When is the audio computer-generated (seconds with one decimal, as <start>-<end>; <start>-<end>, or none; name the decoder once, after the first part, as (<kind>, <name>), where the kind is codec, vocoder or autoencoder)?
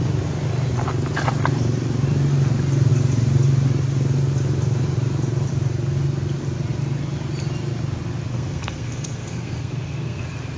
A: 8.3-10.2 (codec, SNAC)